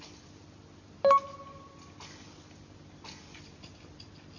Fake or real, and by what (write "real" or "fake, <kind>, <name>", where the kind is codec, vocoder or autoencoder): real